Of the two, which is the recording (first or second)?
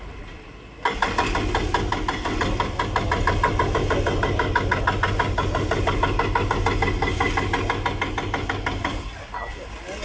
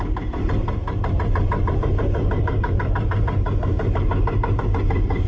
first